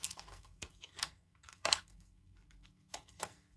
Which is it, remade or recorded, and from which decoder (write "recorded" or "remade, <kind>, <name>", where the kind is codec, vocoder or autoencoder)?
remade, codec, SNAC